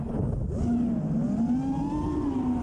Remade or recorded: recorded